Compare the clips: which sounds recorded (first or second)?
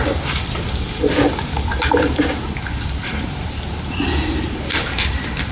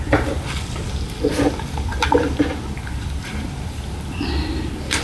second